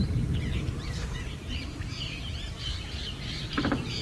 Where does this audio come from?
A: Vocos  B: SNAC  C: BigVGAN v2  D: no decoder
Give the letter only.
C